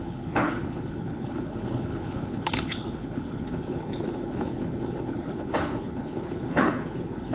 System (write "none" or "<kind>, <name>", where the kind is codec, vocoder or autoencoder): codec, HILCodec